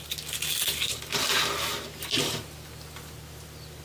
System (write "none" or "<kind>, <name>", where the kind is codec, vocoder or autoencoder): none